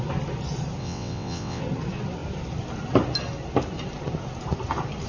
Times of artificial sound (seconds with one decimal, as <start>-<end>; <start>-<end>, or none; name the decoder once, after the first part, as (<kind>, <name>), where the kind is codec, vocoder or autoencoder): 0.8-1.6 (vocoder, WaveNeXt)